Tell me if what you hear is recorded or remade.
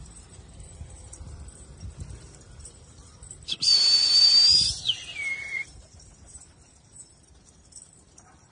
remade